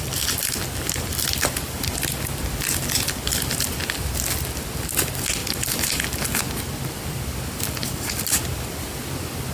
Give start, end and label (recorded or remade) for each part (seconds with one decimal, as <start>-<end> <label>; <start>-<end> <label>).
0.0-9.5 recorded